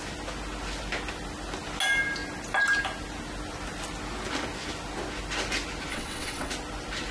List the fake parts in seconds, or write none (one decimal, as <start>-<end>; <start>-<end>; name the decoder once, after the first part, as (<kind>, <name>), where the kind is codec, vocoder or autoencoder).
5.9-6.5 (vocoder, WaveNeXt)